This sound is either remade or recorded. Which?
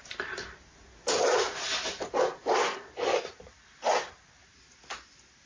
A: recorded